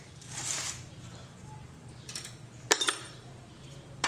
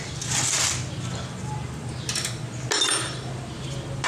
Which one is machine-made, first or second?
first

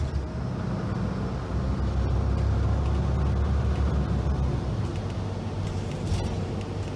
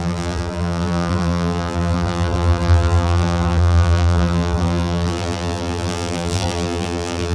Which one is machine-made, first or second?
second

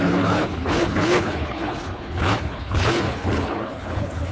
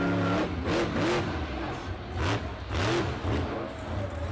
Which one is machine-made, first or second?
first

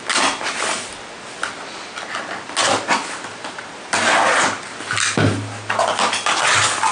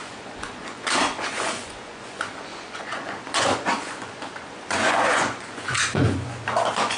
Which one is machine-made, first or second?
second